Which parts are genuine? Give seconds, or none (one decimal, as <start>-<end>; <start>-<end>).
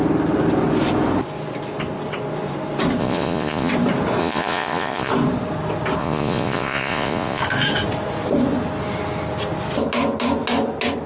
0.0-3.0; 3.7-4.2; 5.1-6.0; 7.4-11.1